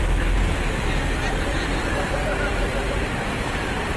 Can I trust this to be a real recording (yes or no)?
no